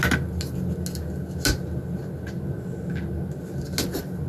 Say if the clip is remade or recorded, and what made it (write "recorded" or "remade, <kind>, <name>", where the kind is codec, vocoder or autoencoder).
recorded